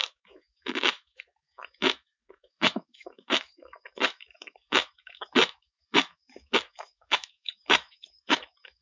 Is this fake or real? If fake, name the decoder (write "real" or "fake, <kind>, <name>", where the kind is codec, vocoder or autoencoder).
fake, autoencoder, DAC-VAE